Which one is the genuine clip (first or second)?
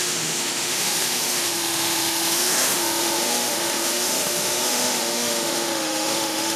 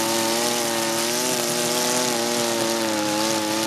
second